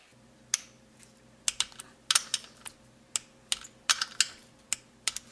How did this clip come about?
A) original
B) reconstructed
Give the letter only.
A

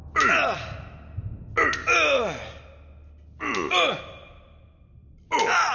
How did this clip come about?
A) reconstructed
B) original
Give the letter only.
B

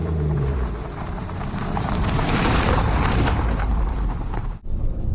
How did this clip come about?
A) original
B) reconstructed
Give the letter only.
B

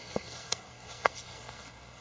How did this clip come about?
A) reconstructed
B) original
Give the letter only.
A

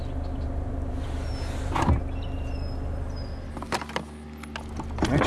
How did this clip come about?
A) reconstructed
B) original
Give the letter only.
B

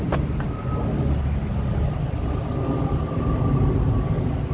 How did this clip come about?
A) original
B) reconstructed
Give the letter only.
A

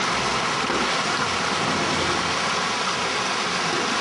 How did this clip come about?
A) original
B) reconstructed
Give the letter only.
A